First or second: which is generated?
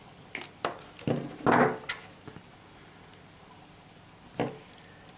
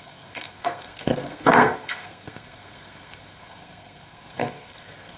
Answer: second